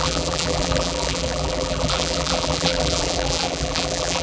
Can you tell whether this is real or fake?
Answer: fake